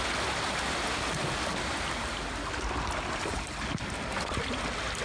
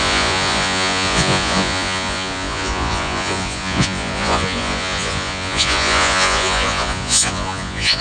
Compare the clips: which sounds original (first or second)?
first